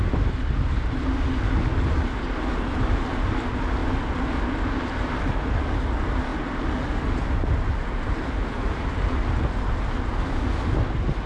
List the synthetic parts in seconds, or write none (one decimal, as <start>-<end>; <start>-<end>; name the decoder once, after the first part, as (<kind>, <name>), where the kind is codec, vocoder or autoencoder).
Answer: none